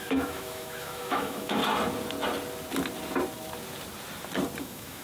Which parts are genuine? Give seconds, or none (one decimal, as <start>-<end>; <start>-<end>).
1.6-4.6

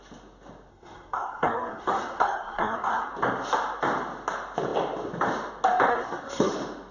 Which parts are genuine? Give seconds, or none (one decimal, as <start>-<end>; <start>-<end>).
0.0-0.7; 3.1-5.9; 6.5-6.9

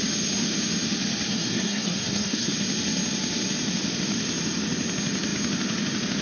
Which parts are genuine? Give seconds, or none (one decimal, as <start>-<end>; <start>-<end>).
0.0-1.3; 2.5-6.2

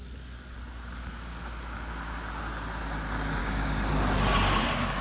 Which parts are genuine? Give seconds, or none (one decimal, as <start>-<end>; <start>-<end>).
0.0-3.4; 3.9-5.0

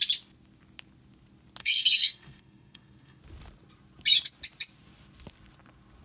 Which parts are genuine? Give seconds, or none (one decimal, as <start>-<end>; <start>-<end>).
0.0-1.6; 3.2-6.0

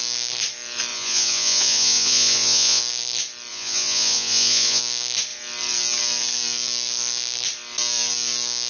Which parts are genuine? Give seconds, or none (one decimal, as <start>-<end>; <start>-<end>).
0.0-0.9; 2.8-3.5; 4.8-8.7